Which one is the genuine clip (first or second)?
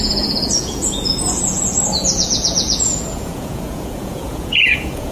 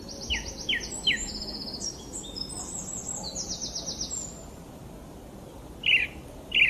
second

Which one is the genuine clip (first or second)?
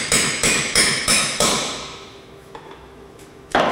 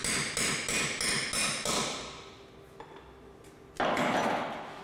second